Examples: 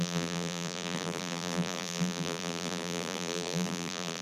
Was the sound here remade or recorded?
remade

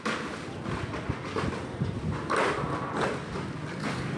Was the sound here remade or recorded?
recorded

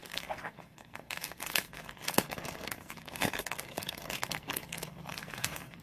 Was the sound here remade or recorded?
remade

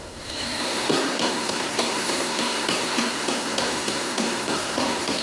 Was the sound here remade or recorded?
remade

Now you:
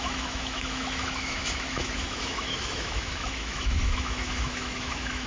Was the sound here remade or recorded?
remade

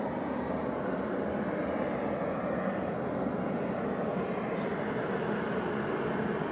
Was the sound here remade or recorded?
recorded